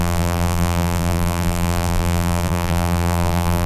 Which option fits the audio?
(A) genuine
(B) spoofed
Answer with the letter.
B